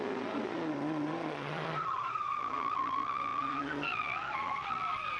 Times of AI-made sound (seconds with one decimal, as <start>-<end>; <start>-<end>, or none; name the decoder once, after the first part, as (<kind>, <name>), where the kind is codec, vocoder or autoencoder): 0.0-5.2 (vocoder, Vocos)